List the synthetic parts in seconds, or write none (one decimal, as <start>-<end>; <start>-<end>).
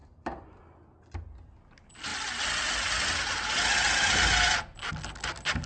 none